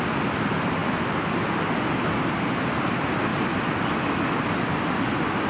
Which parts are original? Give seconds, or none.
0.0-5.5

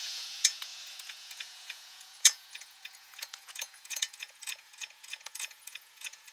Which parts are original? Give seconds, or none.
none

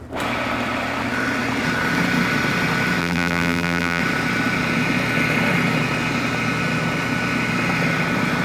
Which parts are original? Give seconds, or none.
0.0-3.0; 4.0-8.4

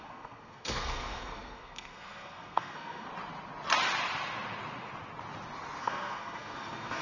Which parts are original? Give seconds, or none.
3.1-5.8

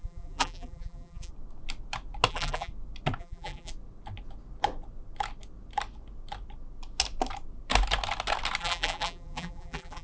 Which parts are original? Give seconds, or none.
1.3-2.3; 2.7-3.2; 3.7-8.6